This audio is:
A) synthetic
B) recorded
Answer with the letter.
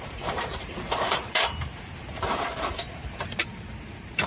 A